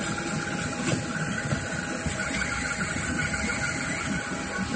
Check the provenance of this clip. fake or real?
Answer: real